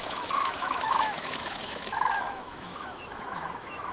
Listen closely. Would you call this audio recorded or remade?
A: remade